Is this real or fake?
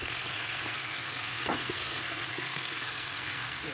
fake